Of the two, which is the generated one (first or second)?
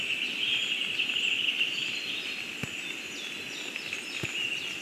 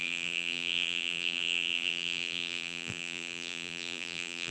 second